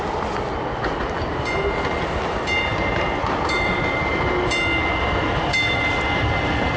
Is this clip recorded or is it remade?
recorded